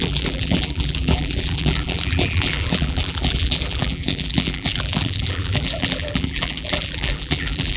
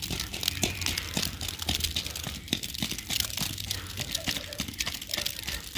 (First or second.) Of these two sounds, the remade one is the first